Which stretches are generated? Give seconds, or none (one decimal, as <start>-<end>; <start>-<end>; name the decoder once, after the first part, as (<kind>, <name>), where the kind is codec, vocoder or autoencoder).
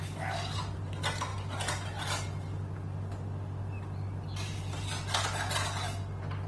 none